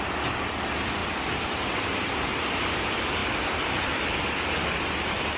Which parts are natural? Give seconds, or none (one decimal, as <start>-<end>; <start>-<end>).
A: 0.0-5.4